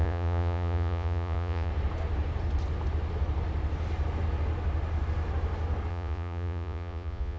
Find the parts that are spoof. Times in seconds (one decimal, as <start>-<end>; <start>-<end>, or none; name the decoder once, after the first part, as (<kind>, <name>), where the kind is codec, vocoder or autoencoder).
0.0-1.7 (vocoder, Vocos); 5.9-7.4